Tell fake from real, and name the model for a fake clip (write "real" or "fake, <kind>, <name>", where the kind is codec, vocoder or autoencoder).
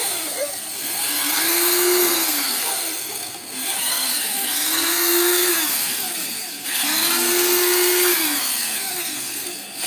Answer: fake, codec, SNAC